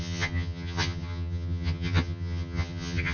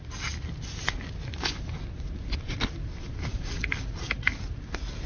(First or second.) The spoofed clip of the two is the first